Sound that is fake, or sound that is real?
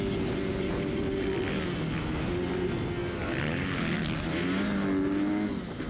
real